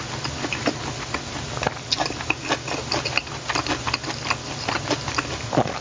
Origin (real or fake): real